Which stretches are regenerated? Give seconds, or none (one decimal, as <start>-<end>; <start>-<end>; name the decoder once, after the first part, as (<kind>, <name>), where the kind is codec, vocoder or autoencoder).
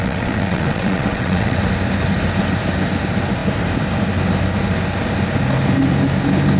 0.0-1.6 (vocoder, WaveNeXt)